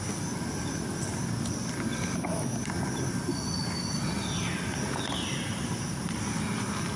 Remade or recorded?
recorded